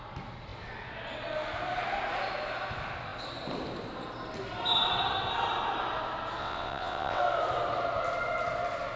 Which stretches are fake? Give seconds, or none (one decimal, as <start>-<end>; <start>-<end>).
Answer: 6.4-7.2